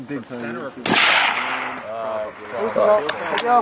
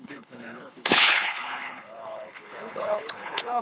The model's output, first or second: second